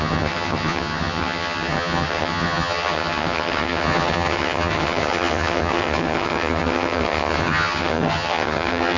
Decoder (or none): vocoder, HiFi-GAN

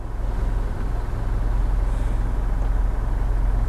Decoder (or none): none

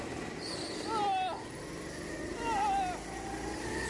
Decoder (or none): none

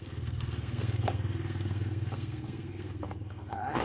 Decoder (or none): codec, SNAC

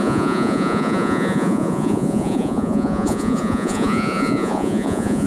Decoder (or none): vocoder, Vocos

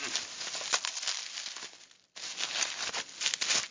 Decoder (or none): none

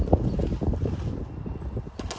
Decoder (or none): none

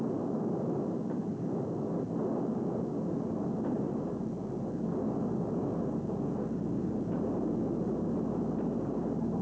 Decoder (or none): none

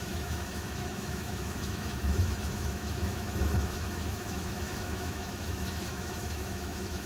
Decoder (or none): autoencoder, DAC-VAE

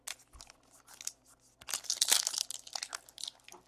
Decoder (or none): none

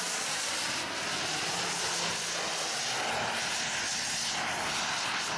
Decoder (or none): none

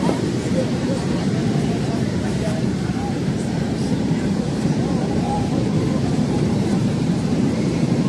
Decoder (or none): vocoder, BigVGAN v2